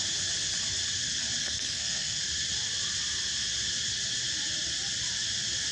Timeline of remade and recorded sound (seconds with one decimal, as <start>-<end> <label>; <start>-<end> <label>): 0.0-1.4 recorded; 1.4-2.2 remade; 2.2-5.7 recorded